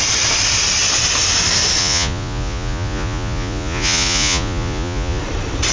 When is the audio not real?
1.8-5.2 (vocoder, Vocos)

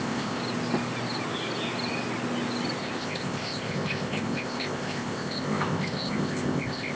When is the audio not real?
0.0-0.4 (codec, ZipCodec); 2.8-7.0